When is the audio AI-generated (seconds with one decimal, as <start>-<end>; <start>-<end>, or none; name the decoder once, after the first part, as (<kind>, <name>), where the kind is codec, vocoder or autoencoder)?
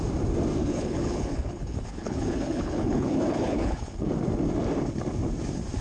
0.6-4.1 (codec, HILCodec)